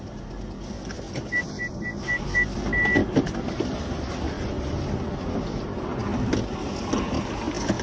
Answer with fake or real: real